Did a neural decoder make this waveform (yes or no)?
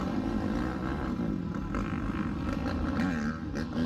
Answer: no